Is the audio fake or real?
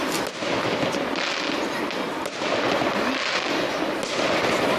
real